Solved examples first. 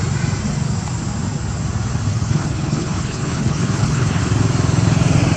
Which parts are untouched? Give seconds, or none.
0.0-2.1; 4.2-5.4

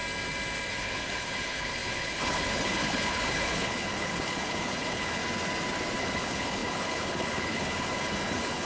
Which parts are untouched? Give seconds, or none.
0.0-0.7; 5.2-6.0

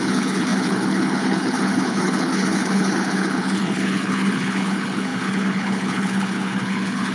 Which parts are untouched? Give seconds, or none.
none

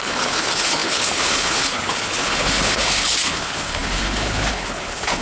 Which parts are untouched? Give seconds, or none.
none

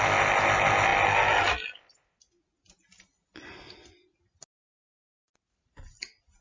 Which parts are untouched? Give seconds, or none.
0.0-6.4

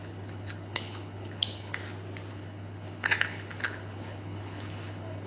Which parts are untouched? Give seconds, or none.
1.8-2.3

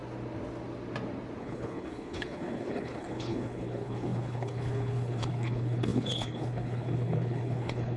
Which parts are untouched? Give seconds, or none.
0.0-1.4

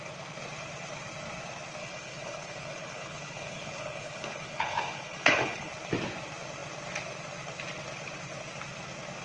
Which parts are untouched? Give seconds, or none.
0.0-1.8; 5.7-9.2